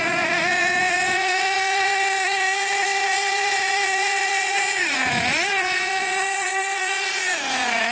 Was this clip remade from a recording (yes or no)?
yes